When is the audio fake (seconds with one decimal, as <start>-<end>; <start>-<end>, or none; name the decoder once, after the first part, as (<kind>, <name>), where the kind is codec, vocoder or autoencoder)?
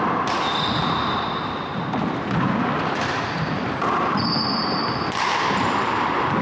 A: 4.6-5.9 (vocoder, BigVGAN v2)